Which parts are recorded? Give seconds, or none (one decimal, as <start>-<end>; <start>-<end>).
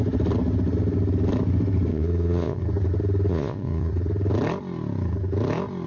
0.0-1.9; 2.6-3.3; 3.9-5.9